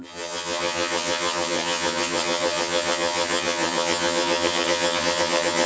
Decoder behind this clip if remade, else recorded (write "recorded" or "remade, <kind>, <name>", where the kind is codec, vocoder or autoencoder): remade, vocoder, HiFi-GAN